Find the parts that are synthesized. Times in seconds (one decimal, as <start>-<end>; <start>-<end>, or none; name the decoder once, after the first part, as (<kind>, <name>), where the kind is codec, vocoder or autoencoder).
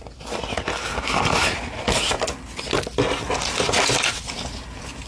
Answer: none